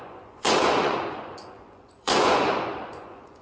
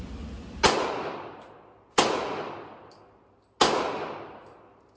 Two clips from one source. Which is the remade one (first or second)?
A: first